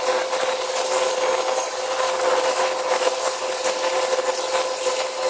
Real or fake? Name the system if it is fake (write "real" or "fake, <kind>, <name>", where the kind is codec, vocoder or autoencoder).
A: real